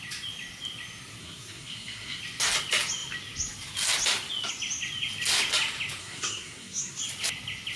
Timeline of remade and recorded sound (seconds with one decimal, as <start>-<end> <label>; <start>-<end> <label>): 0.0-1.2 recorded; 1.2-2.2 remade; 2.2-6.0 recorded; 6.0-7.0 remade; 7.0-7.8 recorded